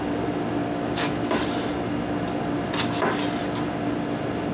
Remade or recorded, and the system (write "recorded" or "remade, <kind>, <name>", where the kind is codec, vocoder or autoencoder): recorded